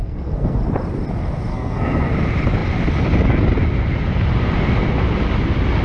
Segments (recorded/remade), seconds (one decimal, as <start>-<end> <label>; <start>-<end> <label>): 0.0-0.6 remade; 0.6-1.5 recorded; 1.5-2.1 remade; 2.1-5.8 recorded